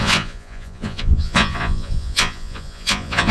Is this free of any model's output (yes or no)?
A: no